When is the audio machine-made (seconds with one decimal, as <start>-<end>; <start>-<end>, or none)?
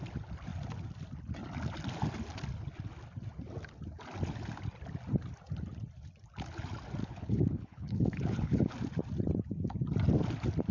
7.0-8.7